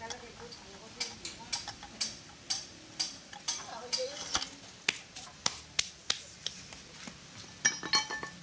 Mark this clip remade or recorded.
recorded